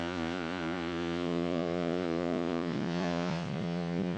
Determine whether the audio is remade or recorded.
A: remade